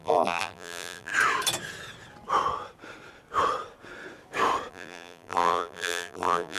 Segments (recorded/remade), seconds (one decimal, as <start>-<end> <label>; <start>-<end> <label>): 0.0-1.1 remade; 1.1-4.7 recorded; 4.7-6.6 remade